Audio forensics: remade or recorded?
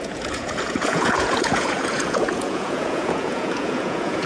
remade